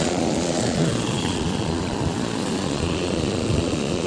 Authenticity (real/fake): fake